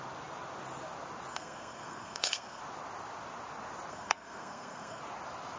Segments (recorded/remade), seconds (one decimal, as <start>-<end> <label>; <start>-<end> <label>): 0.0-1.3 recorded; 1.3-2.6 remade; 2.6-3.9 recorded; 3.9-5.0 remade; 5.0-5.6 recorded